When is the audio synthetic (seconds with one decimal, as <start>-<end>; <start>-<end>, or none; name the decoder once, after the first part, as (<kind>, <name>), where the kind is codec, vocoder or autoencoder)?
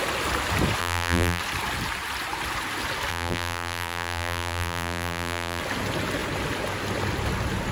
0.8-1.4 (vocoder, BigVGAN v2); 3.1-5.6